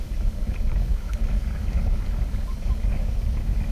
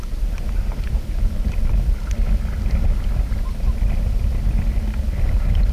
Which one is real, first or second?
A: second